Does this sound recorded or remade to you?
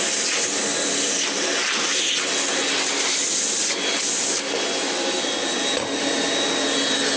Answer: recorded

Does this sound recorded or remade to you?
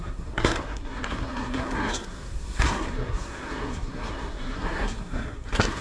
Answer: remade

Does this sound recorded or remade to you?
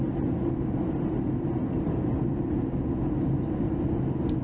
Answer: recorded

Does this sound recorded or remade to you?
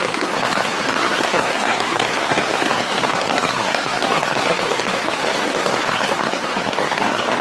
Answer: remade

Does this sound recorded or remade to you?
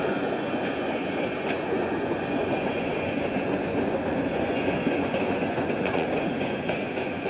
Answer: remade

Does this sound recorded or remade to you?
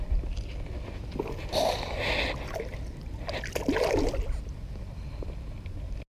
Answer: recorded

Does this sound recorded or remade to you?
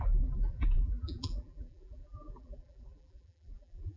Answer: remade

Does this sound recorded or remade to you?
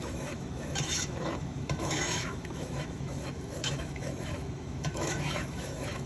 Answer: remade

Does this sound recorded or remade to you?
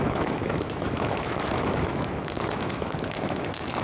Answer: remade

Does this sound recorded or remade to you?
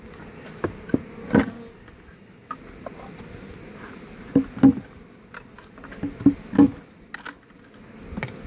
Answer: recorded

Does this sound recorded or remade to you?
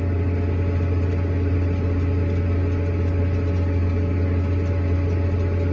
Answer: recorded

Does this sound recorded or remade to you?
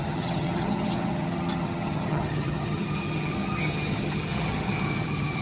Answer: remade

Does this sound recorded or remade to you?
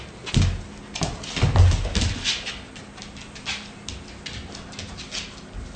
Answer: recorded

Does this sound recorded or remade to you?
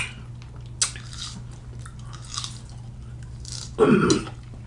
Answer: recorded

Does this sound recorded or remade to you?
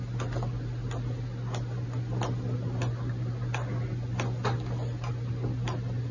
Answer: recorded